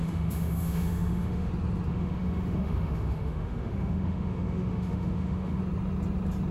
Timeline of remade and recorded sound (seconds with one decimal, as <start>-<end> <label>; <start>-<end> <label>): 0.0-1.5 remade; 1.5-1.9 recorded; 1.9-5.6 remade; 5.6-6.5 recorded